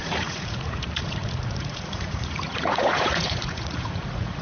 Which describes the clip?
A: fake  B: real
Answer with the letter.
A